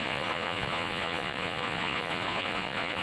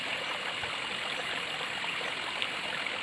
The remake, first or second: first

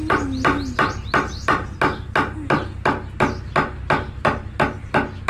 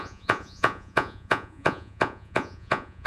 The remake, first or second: second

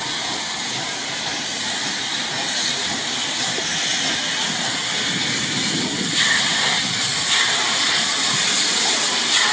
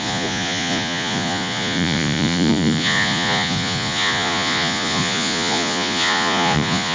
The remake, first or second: second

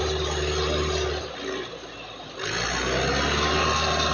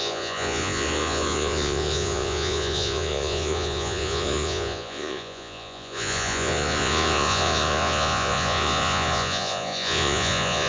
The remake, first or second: second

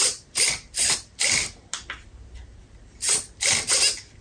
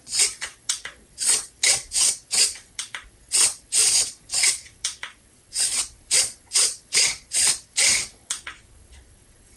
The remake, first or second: second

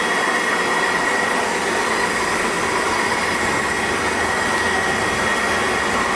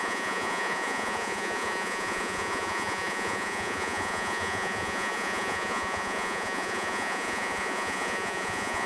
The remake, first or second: second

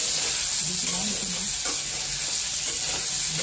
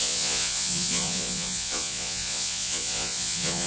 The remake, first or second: second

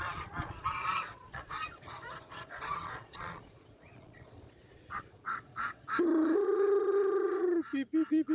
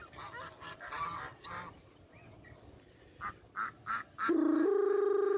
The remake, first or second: first